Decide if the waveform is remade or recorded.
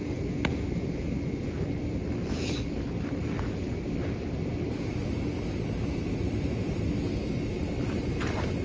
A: recorded